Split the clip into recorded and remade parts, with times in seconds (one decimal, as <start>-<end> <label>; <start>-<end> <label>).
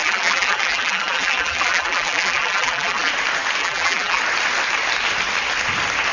0.0-3.1 remade; 3.1-3.6 recorded; 3.6-4.2 remade; 4.2-6.1 recorded